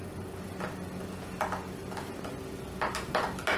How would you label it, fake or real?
real